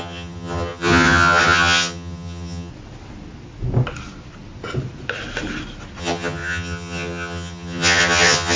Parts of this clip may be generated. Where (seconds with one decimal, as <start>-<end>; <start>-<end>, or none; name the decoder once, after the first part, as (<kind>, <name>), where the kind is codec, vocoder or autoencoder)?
0.0-2.7 (vocoder, HiFi-GAN); 6.0-8.6